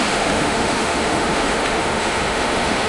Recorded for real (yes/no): no